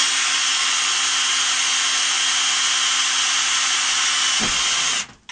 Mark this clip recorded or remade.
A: recorded